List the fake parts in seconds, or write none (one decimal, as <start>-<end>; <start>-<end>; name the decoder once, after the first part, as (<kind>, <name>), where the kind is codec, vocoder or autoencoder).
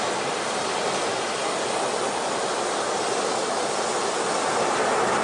none